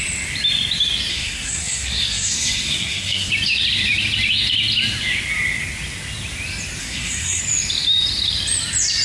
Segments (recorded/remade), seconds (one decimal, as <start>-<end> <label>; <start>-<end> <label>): 0.0-1.1 recorded; 1.1-3.3 remade; 3.3-6.8 recorded; 6.8-7.4 remade; 7.4-9.0 recorded